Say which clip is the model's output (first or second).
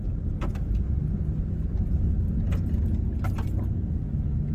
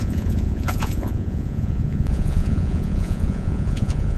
second